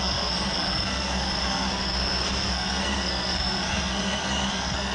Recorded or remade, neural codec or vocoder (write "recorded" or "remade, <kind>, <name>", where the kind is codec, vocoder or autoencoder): remade, codec, SNAC